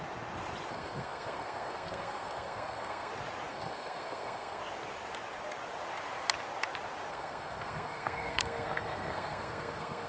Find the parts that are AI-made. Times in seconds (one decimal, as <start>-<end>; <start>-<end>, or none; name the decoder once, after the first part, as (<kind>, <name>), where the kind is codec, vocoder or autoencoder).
0.7-3.1 (codec, SNAC); 3.5-4.6; 7.1-10.1